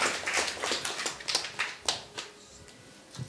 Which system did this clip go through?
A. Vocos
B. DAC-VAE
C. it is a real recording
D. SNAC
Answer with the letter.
C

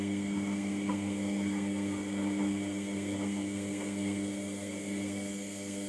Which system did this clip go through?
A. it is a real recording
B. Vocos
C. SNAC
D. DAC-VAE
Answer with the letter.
C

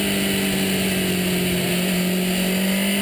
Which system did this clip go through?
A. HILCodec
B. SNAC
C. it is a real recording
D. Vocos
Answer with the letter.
C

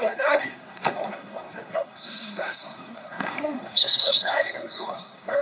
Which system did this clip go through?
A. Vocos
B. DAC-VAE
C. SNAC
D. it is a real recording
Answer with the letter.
C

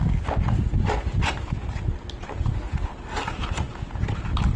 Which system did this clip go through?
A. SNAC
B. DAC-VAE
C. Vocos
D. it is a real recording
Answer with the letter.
D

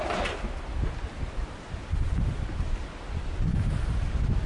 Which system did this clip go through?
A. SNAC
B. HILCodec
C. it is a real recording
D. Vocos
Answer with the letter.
C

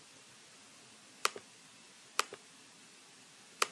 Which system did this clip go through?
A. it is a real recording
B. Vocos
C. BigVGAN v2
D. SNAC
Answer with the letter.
A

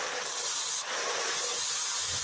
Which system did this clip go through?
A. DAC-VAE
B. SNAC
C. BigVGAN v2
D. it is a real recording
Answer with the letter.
D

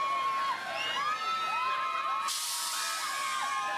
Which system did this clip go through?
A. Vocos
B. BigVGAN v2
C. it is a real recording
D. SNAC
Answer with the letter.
C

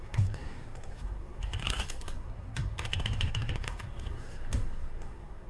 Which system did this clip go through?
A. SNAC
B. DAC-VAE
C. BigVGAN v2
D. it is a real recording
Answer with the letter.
A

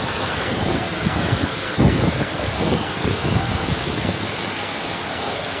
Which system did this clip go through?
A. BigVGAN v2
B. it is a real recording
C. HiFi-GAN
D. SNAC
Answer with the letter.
D